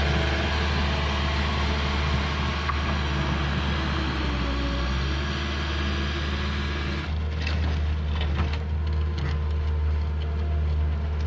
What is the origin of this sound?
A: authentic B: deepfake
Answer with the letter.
A